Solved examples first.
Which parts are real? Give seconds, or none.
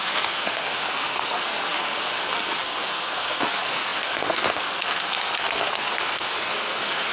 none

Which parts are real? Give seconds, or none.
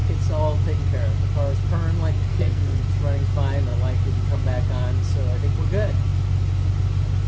0.0-2.3; 2.8-7.3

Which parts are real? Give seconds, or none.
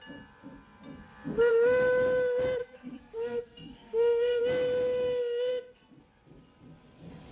0.0-2.6; 4.4-5.5; 6.0-7.3